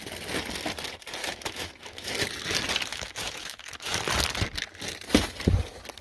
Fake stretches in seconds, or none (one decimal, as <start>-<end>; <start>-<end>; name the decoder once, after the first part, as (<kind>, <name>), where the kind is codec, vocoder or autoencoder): 1.2-2.1 (autoencoder, DAC-VAE); 2.9-4.0

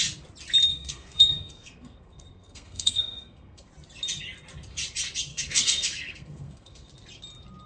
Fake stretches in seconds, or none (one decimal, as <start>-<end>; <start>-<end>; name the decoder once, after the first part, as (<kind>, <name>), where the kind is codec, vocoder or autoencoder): 0.7-3.7 (codec, SNAC); 5.3-6.9

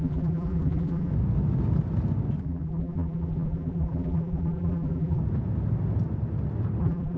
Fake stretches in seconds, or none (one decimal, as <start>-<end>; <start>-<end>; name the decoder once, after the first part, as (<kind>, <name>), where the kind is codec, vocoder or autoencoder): 0.0-1.1 (vocoder, BigVGAN v2); 2.4-5.2; 6.8-7.2

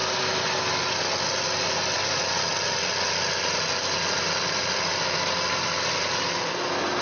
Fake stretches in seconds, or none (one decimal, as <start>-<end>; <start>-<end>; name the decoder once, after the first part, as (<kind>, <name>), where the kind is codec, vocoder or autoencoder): none

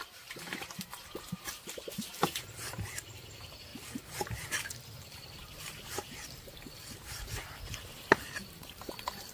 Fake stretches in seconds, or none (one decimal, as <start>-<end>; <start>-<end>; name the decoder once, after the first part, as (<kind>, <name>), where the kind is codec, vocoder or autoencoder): 0.0-9.3 (vocoder, BigVGAN v2)

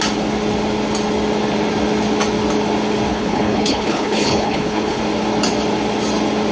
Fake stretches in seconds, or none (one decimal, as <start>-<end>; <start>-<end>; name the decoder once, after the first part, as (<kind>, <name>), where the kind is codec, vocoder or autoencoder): 3.1-5.0 (codec, HILCodec)

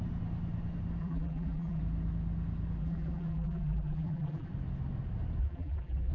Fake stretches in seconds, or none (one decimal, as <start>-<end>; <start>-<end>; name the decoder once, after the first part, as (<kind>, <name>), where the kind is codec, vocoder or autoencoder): 1.0-1.8 (vocoder, BigVGAN v2); 2.8-4.5; 5.4-6.1

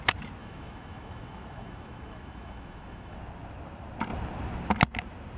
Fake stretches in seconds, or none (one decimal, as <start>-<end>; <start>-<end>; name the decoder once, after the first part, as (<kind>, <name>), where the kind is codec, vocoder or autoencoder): 0.4-3.2 (autoencoder, DAC-VAE)